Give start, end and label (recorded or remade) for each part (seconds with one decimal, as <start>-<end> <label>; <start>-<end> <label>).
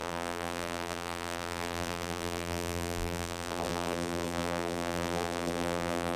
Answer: 0.0-6.2 remade